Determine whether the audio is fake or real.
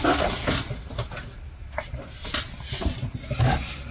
real